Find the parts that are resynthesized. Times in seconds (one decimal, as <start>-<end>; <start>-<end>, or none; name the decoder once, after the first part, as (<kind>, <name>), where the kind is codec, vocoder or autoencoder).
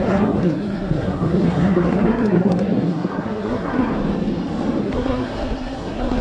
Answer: 0.0-3.9 (codec, SNAC); 4.8-6.2